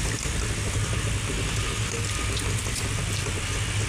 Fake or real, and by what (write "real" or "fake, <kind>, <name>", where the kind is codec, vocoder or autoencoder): real